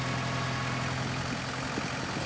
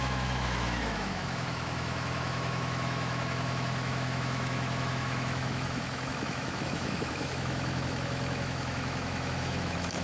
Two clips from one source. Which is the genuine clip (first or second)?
first